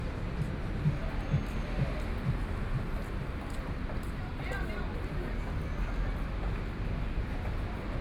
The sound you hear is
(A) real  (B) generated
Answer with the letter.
A